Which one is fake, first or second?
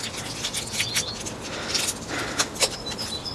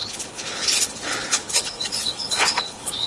second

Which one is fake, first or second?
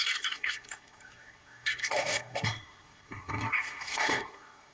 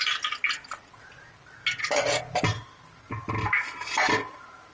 first